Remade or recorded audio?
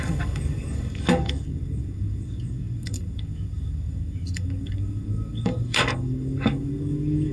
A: remade